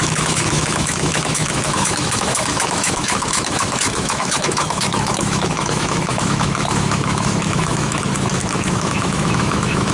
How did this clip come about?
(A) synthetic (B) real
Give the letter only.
A